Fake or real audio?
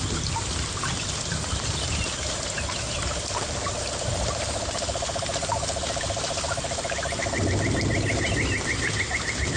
real